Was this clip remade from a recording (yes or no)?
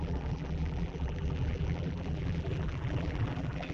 yes